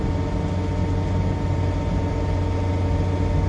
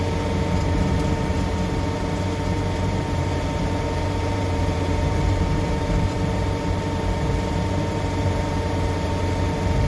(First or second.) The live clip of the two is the first